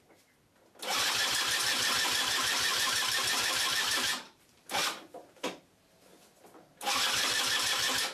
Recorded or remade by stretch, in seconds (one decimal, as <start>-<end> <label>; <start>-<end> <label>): 0.0-2.7 recorded; 2.7-4.8 remade; 4.8-5.2 recorded; 5.2-5.8 remade; 5.8-8.1 recorded